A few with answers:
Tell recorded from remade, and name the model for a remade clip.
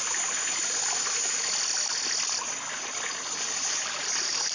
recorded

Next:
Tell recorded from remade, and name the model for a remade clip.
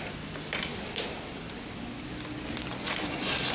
recorded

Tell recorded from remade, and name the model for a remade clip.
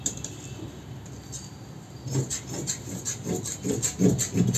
recorded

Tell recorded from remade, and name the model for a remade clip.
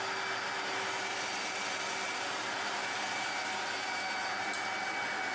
recorded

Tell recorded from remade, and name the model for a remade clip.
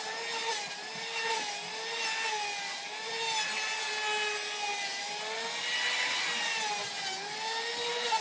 recorded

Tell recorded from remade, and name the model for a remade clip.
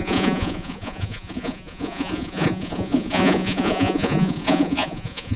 remade, vocoder, Vocos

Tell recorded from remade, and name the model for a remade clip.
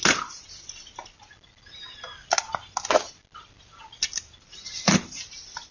recorded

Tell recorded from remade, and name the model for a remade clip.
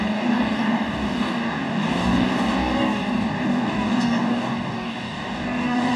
remade, codec, DAC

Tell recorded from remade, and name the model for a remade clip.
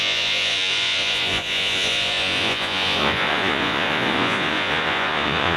remade, vocoder, Vocos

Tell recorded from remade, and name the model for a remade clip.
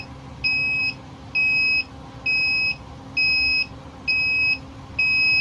recorded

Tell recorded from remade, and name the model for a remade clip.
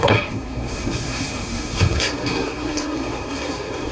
remade, codec, SNAC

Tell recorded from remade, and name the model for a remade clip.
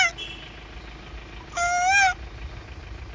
recorded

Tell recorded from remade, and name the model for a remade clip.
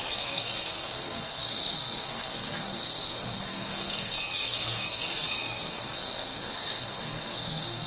remade, codec, SNAC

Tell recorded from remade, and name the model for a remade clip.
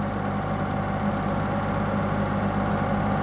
recorded